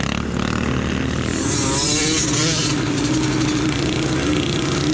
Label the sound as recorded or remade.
recorded